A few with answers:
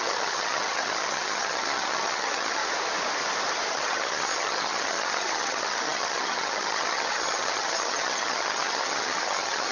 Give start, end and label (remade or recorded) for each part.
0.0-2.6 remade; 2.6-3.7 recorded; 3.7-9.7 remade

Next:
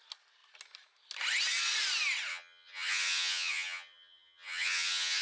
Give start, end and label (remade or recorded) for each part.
0.0-2.3 recorded; 2.3-5.2 remade

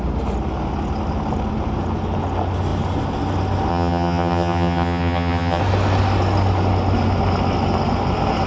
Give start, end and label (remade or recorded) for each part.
0.0-3.7 recorded; 3.7-5.6 remade; 5.6-8.5 recorded

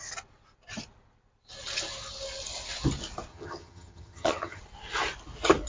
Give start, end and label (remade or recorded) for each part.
0.0-3.3 recorded; 3.3-4.6 remade; 4.6-5.7 recorded

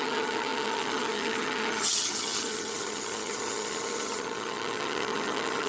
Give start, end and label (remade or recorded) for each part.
0.0-5.7 remade

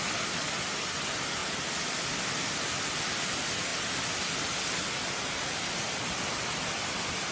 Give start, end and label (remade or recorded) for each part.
0.0-7.3 recorded